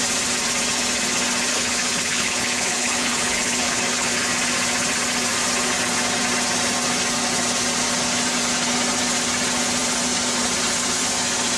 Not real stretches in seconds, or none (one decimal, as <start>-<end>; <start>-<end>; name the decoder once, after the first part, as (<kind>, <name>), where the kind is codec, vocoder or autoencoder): 1.5-4.1 (codec, HILCodec)

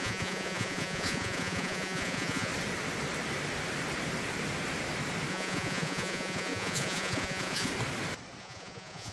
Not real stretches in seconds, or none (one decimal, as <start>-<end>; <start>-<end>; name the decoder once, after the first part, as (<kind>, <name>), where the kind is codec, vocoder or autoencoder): 0.0-2.5 (vocoder, Vocos); 5.3-7.7; 8.4-9.1

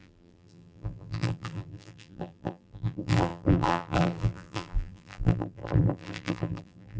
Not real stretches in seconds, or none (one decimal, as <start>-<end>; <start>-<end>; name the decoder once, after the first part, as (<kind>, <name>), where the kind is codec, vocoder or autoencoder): 0.0-7.0 (vocoder, BigVGAN v2)

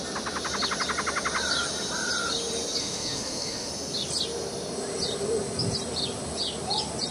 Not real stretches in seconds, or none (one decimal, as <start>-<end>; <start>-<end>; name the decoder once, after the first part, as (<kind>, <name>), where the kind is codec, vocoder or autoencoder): 2.8-3.7 (autoencoder, DAC-VAE)

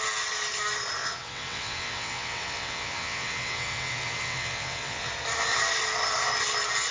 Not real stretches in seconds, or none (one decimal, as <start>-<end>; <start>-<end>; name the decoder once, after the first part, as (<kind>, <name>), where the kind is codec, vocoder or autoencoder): 1.0-5.1 (vocoder, WaveNeXt)

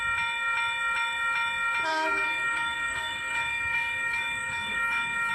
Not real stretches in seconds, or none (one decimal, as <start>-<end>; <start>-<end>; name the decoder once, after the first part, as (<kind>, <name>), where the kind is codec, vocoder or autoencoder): 1.9-5.3 (codec, DAC)

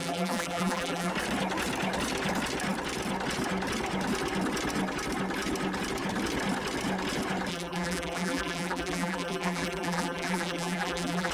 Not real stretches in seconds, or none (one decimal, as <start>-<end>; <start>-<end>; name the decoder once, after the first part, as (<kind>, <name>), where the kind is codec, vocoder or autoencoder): 0.0-1.1 (vocoder, BigVGAN v2); 7.5-11.3